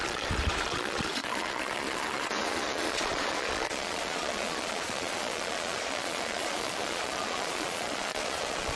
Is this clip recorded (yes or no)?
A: no